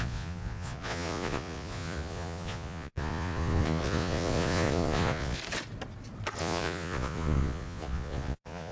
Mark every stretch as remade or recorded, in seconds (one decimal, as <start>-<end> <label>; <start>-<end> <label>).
0.0-5.4 remade; 5.4-6.4 recorded; 6.4-8.7 remade

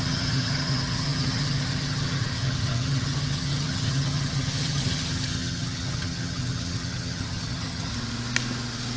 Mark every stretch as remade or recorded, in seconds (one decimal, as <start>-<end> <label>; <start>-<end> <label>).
0.0-7.9 remade; 7.9-9.0 recorded

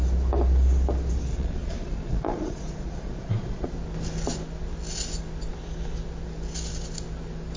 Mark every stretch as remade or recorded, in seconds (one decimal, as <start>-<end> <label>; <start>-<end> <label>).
0.0-1.3 recorded; 1.3-3.7 remade; 3.7-7.6 recorded

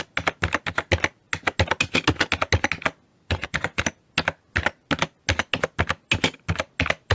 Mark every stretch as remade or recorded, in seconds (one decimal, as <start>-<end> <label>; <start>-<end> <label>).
0.0-3.1 recorded; 3.1-3.8 remade; 3.8-7.1 recorded

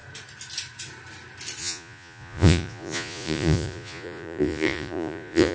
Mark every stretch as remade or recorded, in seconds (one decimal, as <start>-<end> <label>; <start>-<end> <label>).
0.0-1.6 recorded; 1.6-5.5 remade

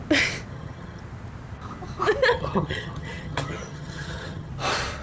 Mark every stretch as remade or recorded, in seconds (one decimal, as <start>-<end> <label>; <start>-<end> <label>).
0.0-0.5 recorded; 0.5-1.0 remade; 1.0-2.3 recorded; 2.3-4.5 remade; 4.5-5.0 recorded

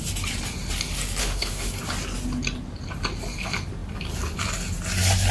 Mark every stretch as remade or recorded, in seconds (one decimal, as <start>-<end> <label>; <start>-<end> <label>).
0.0-1.2 recorded; 1.2-1.7 remade; 1.7-5.3 recorded

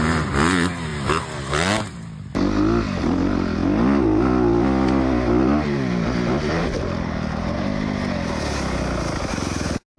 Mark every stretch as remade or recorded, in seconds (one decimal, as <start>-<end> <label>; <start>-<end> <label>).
0.0-10.0 recorded